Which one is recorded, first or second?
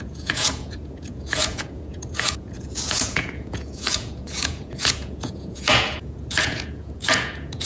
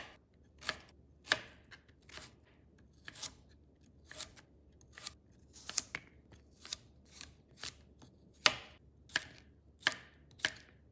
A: second